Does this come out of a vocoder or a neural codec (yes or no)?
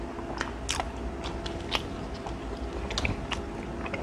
no